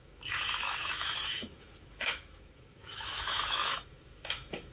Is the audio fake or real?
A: fake